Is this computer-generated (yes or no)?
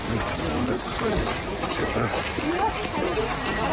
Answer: no